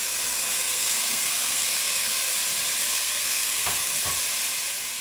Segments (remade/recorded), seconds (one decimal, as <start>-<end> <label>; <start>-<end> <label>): 0.0-2.3 remade; 2.3-2.8 recorded; 2.8-4.0 remade; 4.0-5.0 recorded